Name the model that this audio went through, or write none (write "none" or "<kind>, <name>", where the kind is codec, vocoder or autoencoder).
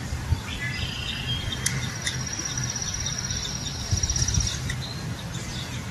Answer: none